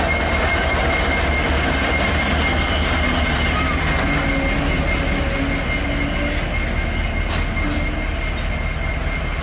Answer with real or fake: real